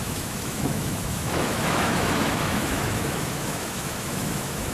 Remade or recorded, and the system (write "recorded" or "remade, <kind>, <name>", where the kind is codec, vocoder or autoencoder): remade, autoencoder, DAC-VAE